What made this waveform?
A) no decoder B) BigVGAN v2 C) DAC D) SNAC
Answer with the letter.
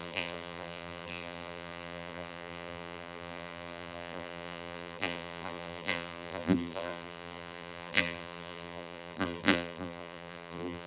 B